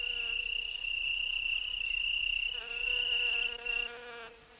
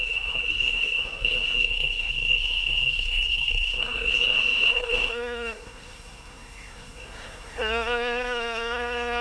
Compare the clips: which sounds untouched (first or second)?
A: first